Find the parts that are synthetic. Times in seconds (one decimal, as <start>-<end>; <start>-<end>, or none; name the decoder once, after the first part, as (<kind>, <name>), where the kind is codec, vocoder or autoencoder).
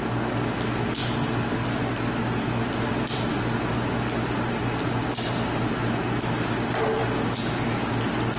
none